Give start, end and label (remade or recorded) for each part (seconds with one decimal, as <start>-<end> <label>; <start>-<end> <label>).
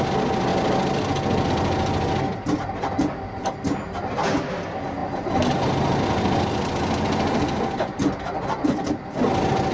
0.0-9.7 recorded